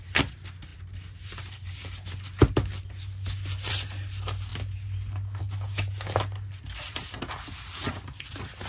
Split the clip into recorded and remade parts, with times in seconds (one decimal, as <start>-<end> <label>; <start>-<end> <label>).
0.0-8.7 recorded